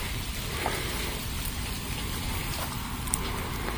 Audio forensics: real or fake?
real